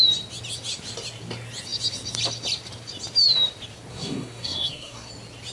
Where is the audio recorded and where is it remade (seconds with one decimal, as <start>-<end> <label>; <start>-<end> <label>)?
0.0-3.9 recorded; 3.9-5.1 remade; 5.1-5.5 recorded